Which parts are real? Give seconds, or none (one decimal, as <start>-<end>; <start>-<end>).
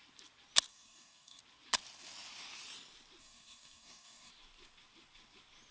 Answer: 0.0-0.7; 1.4-3.2; 4.3-5.7